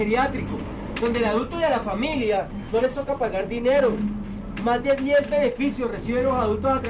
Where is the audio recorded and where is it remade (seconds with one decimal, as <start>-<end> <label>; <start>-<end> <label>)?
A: 0.0-6.9 recorded